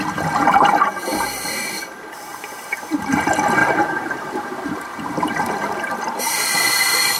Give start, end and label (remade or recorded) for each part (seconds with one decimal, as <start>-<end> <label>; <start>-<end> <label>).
0.0-2.3 recorded; 2.3-3.1 remade; 3.1-3.6 recorded; 3.6-6.2 remade; 6.2-7.2 recorded